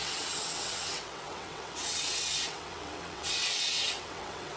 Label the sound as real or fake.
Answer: fake